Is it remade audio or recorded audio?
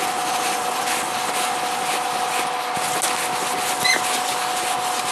recorded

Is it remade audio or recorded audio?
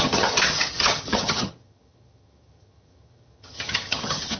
remade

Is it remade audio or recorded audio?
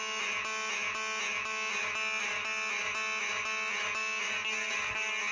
recorded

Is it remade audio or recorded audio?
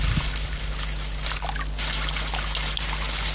recorded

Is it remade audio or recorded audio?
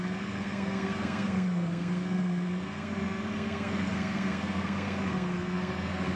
remade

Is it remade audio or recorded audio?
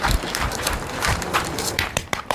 remade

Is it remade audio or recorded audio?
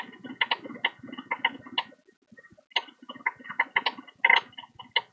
recorded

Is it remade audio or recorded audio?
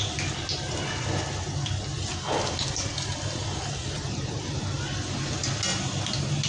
recorded